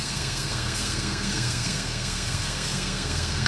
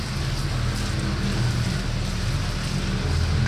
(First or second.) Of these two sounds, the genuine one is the second